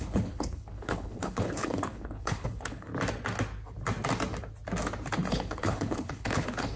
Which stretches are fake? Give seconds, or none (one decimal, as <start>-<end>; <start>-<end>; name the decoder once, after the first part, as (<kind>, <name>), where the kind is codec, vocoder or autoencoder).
0.0-2.9 (codec, HILCodec); 5.3-6.8